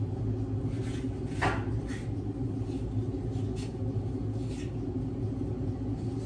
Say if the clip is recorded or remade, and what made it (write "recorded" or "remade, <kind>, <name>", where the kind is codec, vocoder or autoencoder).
recorded